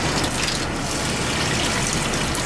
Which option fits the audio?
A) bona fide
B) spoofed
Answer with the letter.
A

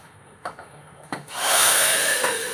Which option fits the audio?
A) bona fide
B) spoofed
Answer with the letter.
B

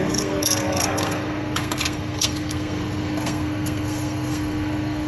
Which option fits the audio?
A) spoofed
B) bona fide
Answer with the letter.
A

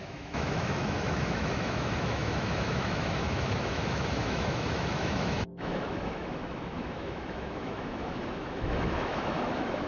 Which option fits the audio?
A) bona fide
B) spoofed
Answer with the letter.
B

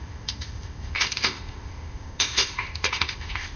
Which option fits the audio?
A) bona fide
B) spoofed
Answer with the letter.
B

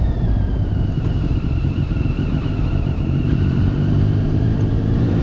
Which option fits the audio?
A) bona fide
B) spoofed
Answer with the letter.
B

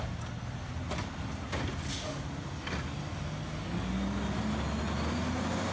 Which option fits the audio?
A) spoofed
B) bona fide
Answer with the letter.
B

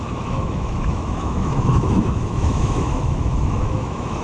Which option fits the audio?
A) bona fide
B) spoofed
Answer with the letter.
B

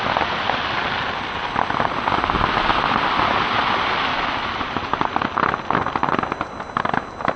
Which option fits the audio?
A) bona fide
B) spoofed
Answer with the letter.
A